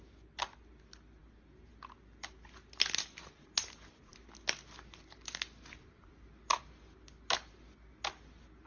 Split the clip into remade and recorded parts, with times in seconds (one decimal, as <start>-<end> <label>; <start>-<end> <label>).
0.0-8.7 recorded